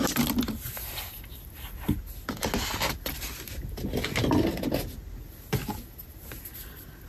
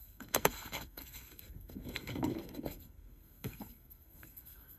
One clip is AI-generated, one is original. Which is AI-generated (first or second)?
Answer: second